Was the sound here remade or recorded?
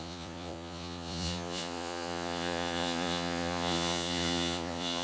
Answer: remade